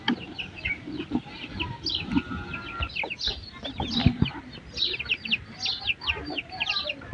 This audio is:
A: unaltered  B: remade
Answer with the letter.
A